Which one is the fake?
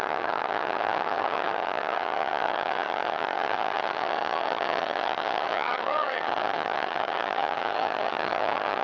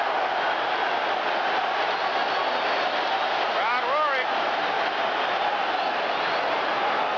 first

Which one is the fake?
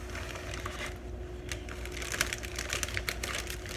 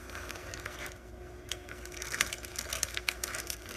second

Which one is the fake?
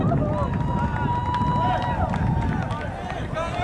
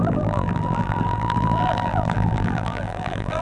second